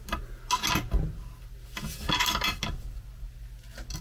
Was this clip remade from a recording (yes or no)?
no